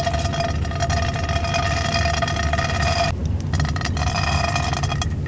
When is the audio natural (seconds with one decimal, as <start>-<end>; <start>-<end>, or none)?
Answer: 0.0-5.3